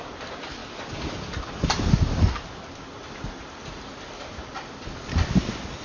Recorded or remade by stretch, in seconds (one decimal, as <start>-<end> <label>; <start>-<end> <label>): 0.0-5.8 recorded